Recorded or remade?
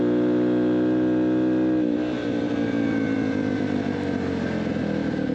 recorded